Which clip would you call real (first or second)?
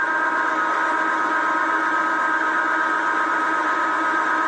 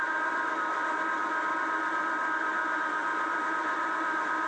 first